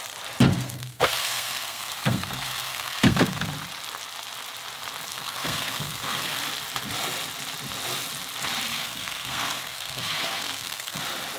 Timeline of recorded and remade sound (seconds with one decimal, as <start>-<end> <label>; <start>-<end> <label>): 0.0-0.5 recorded; 0.5-3.5 remade; 3.5-5.1 recorded; 5.1-6.4 remade; 6.4-8.7 recorded; 8.7-11.0 remade; 11.0-11.4 recorded